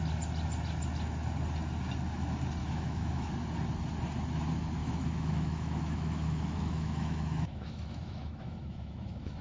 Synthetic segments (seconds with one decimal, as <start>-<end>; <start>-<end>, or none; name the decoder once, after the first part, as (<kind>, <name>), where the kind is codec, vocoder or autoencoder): 2.6-3.3 (autoencoder, DAC-VAE); 4.8-9.4